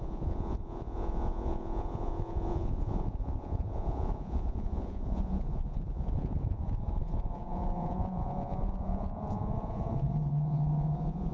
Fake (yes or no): yes